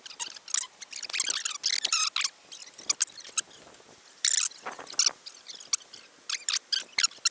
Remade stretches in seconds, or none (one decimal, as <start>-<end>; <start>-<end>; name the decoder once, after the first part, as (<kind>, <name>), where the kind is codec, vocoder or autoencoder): none